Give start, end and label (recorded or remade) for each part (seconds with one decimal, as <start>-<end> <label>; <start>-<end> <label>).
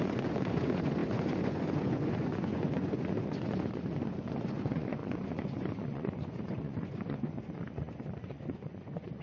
0.0-9.2 remade